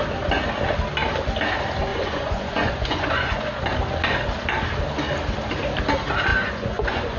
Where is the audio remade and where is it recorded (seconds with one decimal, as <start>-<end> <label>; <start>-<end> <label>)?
0.0-1.9 recorded; 1.9-3.5 remade; 3.5-6.3 recorded; 6.3-7.2 remade

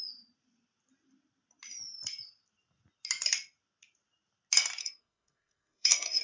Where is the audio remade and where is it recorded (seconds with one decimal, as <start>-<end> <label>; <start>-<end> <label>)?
0.0-4.8 recorded; 4.8-6.2 remade

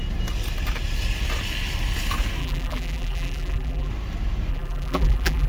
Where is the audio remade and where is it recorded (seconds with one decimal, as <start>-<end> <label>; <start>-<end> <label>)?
0.0-2.4 recorded; 2.4-3.9 remade; 3.9-4.5 recorded; 4.5-5.5 remade

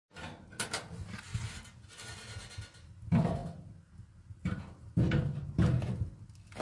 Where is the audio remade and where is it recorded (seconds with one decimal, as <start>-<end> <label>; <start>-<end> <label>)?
0.0-6.6 recorded